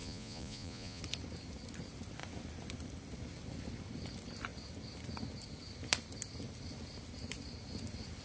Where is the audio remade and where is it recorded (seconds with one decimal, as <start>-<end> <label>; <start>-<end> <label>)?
0.0-1.0 remade; 1.0-8.2 recorded